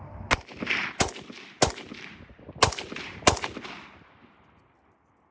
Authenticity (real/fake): real